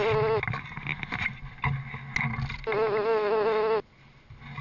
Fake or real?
real